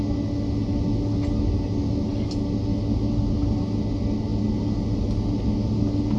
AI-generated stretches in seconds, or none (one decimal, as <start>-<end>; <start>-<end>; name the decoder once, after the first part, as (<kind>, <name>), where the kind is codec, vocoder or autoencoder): none